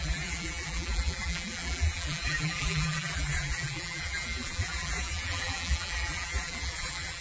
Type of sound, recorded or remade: remade